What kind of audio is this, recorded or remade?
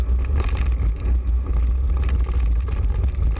recorded